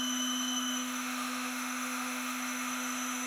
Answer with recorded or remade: remade